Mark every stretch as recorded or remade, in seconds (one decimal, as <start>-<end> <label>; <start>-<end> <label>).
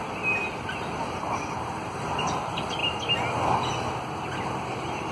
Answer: 0.0-5.1 recorded